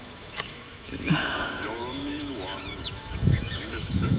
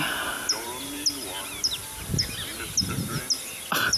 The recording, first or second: second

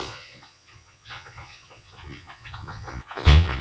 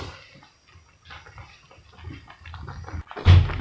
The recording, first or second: second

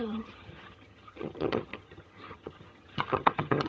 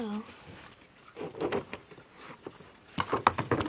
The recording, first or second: second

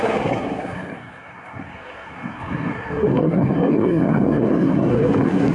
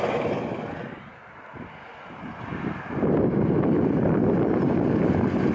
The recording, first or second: second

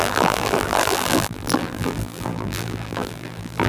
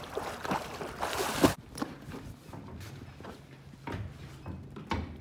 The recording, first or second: second